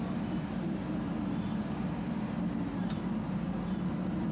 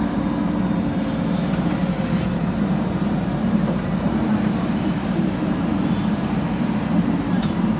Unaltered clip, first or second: first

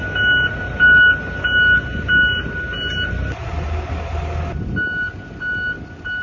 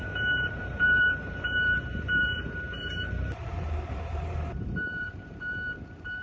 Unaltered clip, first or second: first